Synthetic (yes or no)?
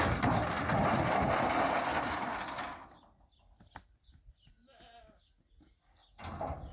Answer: no